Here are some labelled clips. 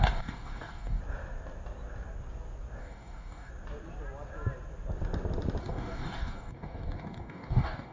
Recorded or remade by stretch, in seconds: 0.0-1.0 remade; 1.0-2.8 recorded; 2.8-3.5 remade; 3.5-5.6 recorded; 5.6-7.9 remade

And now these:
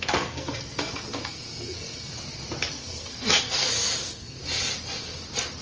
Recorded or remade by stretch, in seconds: 0.0-2.1 remade; 2.1-2.7 recorded; 2.7-4.4 remade; 4.4-5.6 recorded

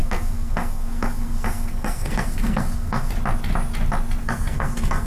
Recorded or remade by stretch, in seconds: 0.0-3.1 remade; 3.1-4.2 recorded; 4.2-5.1 remade

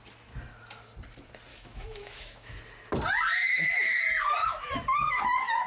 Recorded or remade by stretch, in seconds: 0.0-1.5 recorded; 1.5-2.6 remade; 2.6-3.4 recorded; 3.4-4.0 remade; 4.0-4.4 recorded; 4.4-5.2 remade; 5.2-5.7 recorded